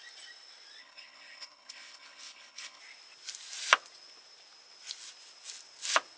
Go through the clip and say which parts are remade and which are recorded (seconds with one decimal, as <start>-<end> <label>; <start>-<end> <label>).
0.0-0.8 recorded; 0.8-2.8 remade; 2.8-6.2 recorded